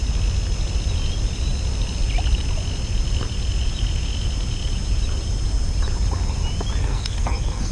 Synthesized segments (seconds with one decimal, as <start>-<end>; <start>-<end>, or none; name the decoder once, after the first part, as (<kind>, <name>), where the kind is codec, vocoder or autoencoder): 6.8-7.7 (codec, SNAC)